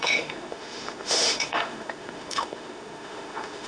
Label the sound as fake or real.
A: fake